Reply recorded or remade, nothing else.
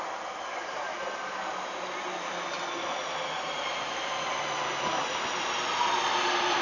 recorded